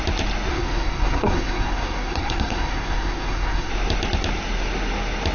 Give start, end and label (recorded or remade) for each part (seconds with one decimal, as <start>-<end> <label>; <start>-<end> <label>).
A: 0.0-0.5 recorded; 0.5-3.7 remade; 3.7-5.3 recorded